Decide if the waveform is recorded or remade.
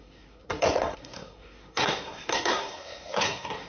remade